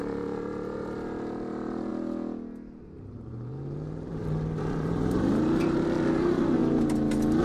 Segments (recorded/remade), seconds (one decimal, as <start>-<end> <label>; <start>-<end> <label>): 0.0-1.9 remade; 1.9-2.8 recorded; 2.8-4.1 remade; 4.1-4.6 recorded; 4.6-6.6 remade; 6.6-7.4 recorded